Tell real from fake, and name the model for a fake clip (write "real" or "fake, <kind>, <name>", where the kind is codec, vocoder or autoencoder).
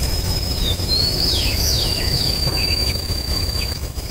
fake, autoencoder, DAC-VAE